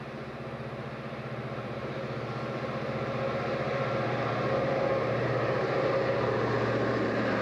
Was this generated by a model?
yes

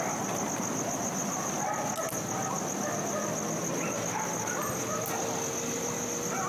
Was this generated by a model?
no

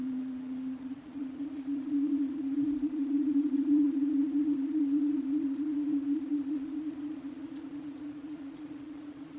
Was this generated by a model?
yes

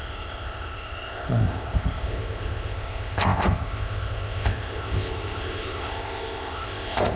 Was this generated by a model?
yes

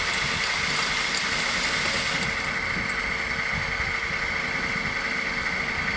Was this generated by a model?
no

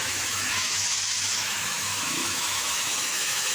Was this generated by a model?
yes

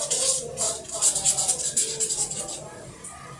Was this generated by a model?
no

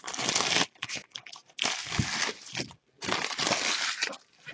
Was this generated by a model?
no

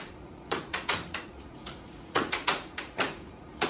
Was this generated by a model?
yes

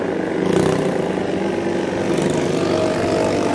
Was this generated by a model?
no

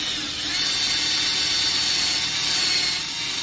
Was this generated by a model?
no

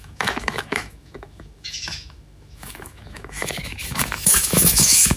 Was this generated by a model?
yes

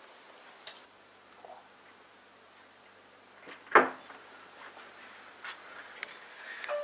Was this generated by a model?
no